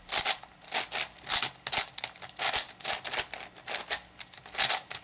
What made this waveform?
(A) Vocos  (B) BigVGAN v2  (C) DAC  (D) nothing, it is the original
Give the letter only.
D